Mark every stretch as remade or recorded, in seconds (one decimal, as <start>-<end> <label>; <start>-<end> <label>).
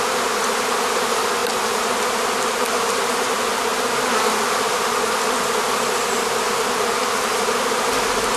0.0-8.4 recorded